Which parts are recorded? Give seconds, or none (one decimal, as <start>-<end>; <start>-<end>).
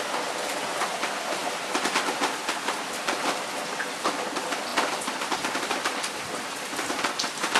0.0-7.6